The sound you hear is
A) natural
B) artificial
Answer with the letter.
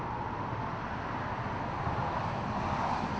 A